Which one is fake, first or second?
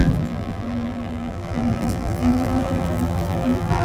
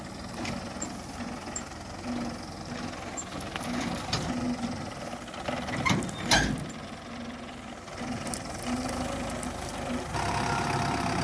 first